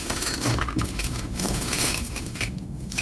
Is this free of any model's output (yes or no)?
no